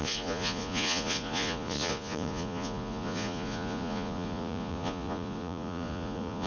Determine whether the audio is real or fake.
fake